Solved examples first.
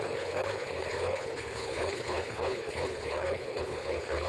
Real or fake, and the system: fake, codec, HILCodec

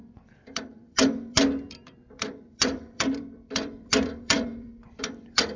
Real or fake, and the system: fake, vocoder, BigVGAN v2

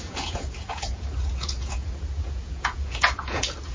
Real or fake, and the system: fake, vocoder, Vocos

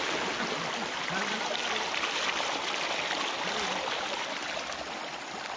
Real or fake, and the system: real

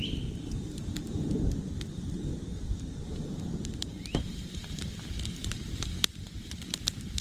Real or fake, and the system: fake, vocoder, BigVGAN v2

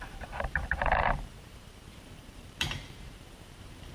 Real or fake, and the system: fake, vocoder, BigVGAN v2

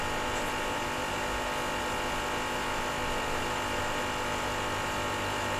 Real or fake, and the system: real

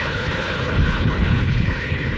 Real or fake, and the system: fake, codec, HILCodec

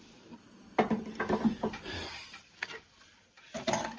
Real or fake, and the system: real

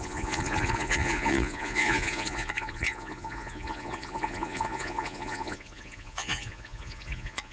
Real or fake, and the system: fake, vocoder, Vocos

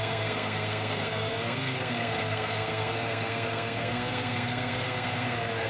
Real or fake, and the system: fake, codec, SNAC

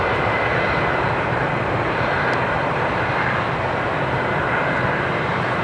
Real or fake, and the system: fake, vocoder, BigVGAN v2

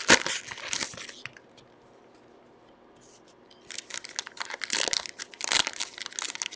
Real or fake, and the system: real